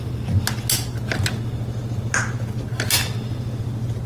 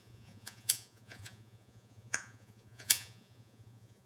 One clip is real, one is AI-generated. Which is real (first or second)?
first